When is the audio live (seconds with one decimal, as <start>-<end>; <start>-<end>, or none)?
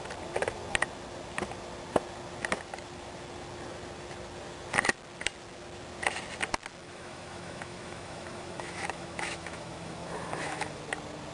0.0-6.8; 10.8-11.3